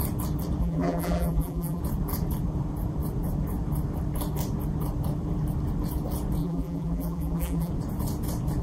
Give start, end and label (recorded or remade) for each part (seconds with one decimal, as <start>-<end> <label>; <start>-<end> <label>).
0.0-0.6 recorded; 0.6-1.8 remade; 1.8-6.4 recorded; 6.4-7.7 remade; 7.7-8.6 recorded